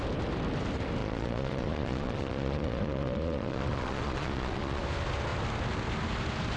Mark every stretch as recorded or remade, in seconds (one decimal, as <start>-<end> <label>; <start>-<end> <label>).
0.0-1.0 recorded; 1.0-4.8 remade; 4.8-6.6 recorded